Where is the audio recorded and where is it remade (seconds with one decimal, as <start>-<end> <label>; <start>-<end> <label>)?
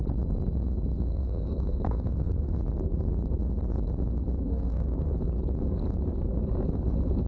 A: 0.0-1.1 recorded; 1.1-2.4 remade; 2.4-4.5 recorded; 4.5-5.1 remade; 5.1-7.3 recorded